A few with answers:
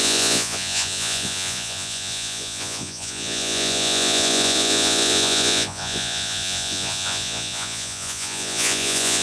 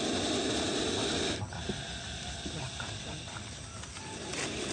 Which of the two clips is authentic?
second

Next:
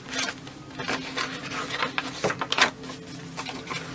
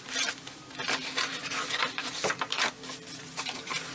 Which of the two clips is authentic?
first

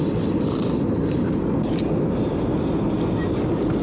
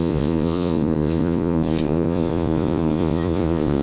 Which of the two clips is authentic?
first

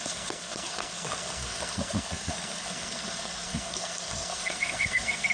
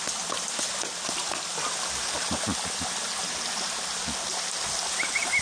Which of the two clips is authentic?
second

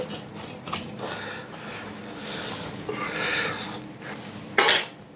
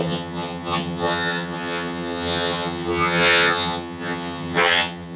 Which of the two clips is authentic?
first